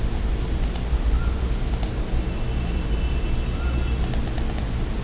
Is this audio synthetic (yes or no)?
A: no